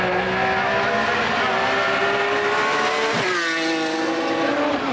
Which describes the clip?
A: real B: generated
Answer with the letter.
A